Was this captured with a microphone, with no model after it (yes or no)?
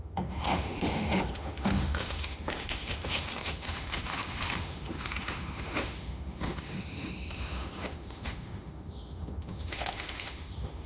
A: no